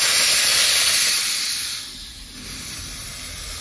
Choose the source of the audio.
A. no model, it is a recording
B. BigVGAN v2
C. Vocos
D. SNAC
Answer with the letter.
A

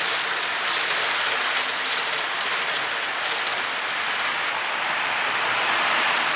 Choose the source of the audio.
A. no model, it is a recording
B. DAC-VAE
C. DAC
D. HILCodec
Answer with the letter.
A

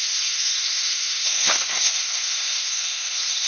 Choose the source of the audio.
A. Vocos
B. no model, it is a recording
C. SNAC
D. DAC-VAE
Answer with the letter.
C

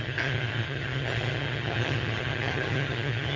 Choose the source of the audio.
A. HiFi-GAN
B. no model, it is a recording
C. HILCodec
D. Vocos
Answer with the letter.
A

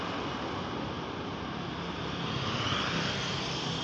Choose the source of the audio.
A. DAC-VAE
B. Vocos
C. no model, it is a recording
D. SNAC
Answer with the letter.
C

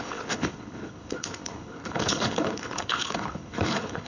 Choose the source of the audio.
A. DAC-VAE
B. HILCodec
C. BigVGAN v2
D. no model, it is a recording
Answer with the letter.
B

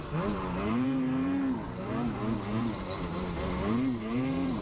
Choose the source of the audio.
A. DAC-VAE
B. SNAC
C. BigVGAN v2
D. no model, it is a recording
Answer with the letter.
C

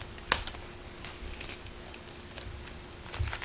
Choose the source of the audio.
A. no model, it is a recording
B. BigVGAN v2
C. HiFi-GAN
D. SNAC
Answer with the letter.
A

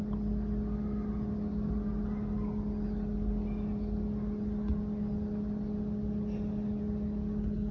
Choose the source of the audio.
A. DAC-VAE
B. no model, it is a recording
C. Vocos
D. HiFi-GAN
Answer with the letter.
B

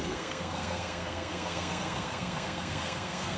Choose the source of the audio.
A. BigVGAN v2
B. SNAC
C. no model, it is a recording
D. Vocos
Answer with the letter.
B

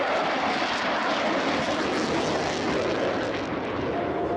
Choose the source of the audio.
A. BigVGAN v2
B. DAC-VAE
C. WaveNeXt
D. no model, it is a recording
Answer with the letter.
D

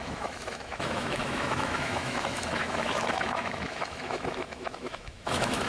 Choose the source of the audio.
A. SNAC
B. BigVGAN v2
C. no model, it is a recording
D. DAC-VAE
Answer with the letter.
D